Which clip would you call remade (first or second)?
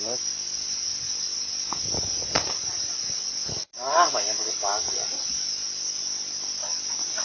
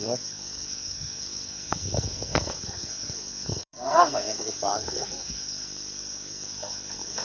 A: second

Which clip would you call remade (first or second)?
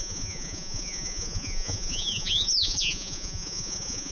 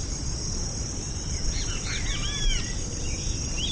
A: first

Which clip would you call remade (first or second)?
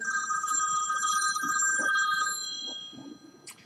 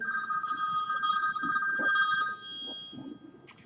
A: first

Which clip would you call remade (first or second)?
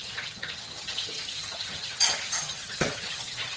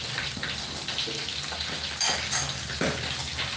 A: first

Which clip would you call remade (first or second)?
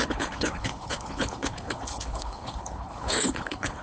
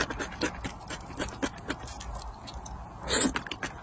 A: first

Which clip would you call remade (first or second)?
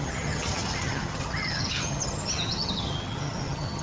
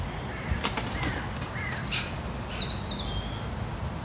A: first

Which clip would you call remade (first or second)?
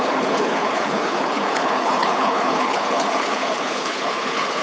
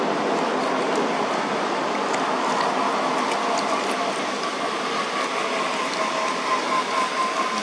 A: first